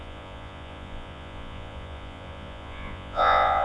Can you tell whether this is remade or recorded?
remade